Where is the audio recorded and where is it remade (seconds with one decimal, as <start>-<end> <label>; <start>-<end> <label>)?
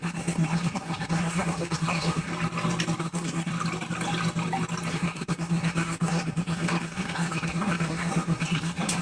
0.0-2.3 remade; 2.3-3.0 recorded; 3.0-3.5 remade; 3.5-4.9 recorded; 4.9-9.0 remade